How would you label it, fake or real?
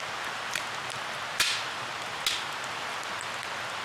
real